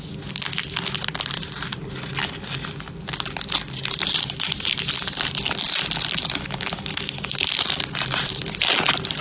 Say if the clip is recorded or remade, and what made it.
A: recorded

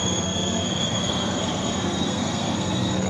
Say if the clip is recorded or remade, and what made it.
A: remade, codec, SNAC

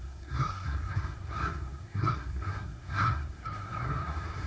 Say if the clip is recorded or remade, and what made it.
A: remade, codec, SNAC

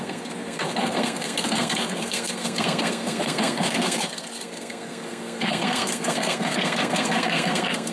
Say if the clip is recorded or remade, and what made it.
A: remade, codec, SNAC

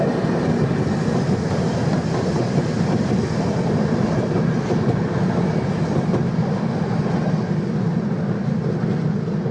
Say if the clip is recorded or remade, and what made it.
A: recorded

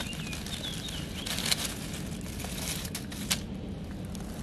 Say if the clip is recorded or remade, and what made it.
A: recorded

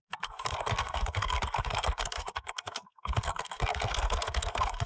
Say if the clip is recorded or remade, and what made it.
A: remade, codec, SNAC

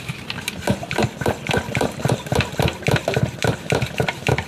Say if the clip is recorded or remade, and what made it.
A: recorded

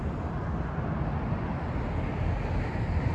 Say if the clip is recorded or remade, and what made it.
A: recorded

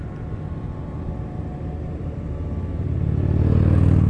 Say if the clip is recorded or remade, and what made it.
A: recorded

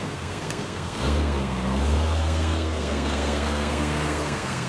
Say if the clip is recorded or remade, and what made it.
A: remade, codec, SNAC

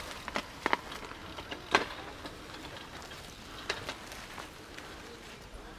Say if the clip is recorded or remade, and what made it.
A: recorded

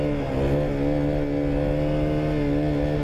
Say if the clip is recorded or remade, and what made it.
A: recorded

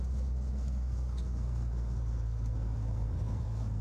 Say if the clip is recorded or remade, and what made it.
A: remade, codec, SNAC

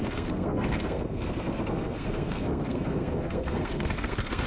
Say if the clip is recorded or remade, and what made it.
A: remade, codec, SNAC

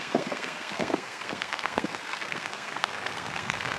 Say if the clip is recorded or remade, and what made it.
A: remade, codec, SNAC